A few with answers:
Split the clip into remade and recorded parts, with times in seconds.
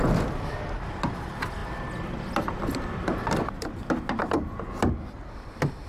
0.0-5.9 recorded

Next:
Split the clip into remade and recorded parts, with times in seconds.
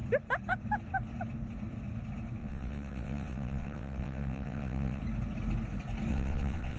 0.0-2.4 recorded; 2.4-5.0 remade; 5.0-6.1 recorded; 6.1-6.8 remade